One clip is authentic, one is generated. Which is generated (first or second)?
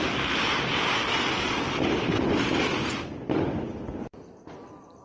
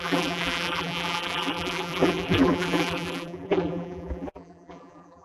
second